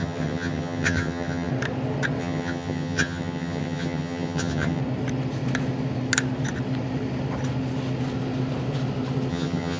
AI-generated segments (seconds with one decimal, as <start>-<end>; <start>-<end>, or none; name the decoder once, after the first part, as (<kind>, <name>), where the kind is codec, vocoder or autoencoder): 0.0-1.5 (vocoder, HiFi-GAN); 2.2-4.8; 9.3-9.8